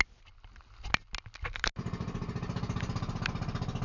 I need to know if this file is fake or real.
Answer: real